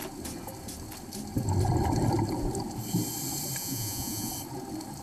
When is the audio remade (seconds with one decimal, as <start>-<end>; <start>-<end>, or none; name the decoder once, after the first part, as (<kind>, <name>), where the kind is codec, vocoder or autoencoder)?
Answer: 3.6-4.3 (vocoder, Vocos)